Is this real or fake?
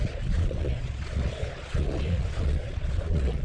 fake